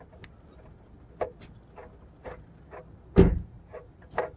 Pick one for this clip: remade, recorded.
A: recorded